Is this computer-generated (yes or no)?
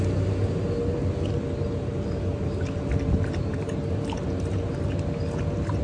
no